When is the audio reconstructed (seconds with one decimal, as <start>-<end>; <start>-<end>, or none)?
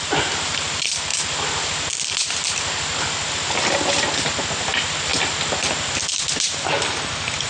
none